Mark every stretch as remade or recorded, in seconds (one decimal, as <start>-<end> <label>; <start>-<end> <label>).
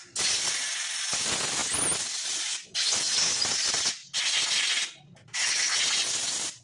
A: 0.0-6.6 recorded